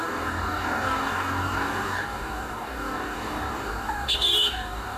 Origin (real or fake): fake